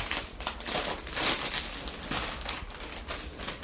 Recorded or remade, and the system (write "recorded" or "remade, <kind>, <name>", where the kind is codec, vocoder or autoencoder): recorded